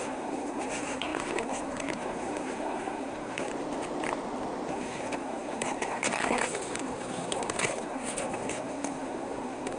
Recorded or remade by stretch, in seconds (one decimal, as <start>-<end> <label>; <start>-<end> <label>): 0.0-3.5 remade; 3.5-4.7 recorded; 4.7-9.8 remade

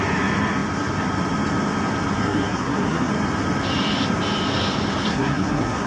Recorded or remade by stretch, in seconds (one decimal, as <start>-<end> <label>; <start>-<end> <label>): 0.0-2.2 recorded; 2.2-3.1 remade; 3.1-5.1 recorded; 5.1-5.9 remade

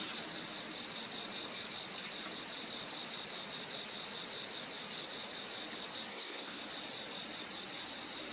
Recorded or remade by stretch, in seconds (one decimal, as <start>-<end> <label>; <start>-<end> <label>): 0.0-6.1 recorded; 6.1-6.6 remade; 6.6-8.3 recorded

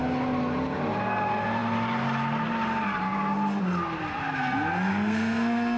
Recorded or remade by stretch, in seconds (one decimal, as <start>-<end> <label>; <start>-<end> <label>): 0.0-4.9 recorded; 4.9-5.8 remade

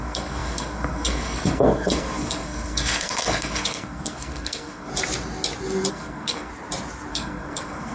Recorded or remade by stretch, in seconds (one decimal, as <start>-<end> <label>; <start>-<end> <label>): 0.0-4.9 remade; 4.9-5.9 recorded; 5.9-6.5 remade; 6.5-7.1 recorded; 7.1-7.9 remade

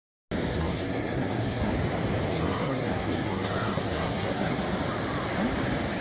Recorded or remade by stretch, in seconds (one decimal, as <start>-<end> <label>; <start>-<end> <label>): 0.0-0.5 recorded; 0.5-1.7 remade; 1.7-2.3 recorded; 2.3-4.6 remade; 4.6-6.0 recorded